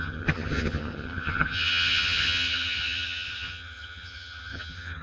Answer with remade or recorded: remade